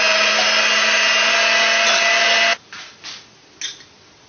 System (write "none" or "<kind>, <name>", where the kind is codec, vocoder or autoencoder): none